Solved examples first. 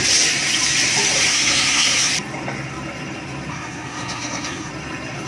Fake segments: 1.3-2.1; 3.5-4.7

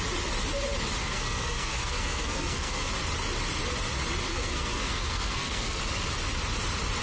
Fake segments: 1.0-2.9; 4.3-5.8

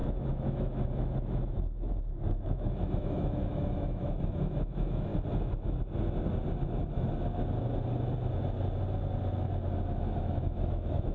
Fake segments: 0.0-5.1; 10.0-11.1

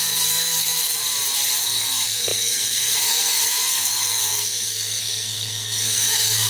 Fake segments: 0.0-1.0; 1.6-6.5

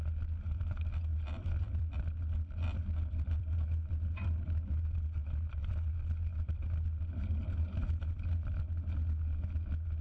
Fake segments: 1.1-3.5

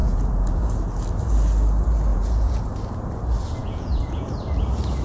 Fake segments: 0.0-0.5; 2.1-2.6; 3.6-4.2

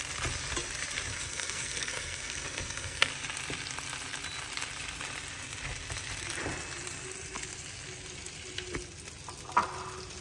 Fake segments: 1.1-3.1